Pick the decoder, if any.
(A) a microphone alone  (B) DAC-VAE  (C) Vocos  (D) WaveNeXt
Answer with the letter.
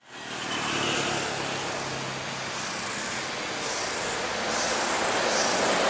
A